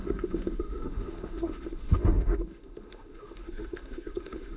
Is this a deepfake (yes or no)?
yes